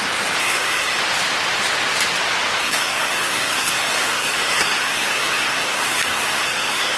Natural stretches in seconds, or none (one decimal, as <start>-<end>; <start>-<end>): 0.0-0.4; 1.0-2.6